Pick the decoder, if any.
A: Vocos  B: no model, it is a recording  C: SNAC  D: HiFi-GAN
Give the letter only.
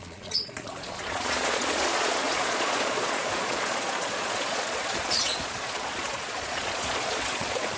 A